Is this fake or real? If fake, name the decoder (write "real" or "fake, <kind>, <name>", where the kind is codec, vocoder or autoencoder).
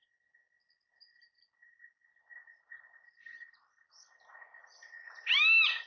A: real